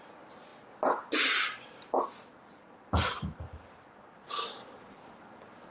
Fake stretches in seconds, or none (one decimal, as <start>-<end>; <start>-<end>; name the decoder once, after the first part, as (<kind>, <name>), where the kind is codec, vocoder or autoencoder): none